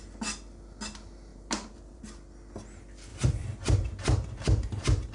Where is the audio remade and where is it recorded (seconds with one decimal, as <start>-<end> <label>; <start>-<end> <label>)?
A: 0.0-1.3 recorded; 1.3-2.0 remade; 2.0-3.1 recorded; 3.1-5.1 remade